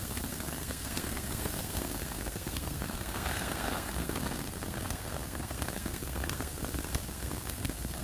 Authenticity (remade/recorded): remade